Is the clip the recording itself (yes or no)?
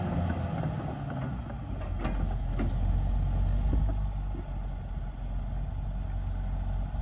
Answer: yes